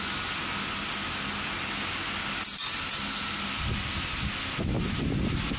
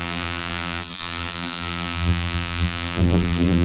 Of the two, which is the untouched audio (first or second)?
first